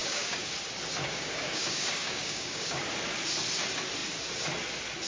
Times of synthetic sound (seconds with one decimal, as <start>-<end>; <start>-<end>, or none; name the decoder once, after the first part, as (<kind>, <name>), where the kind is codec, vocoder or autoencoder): 0.0-0.5 (codec, DAC); 1.0-2.8